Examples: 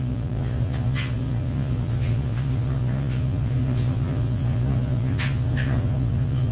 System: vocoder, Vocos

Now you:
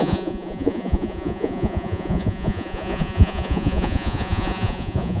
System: vocoder, Vocos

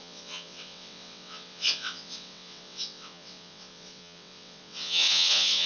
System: vocoder, WaveNeXt